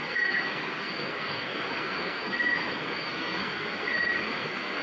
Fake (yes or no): yes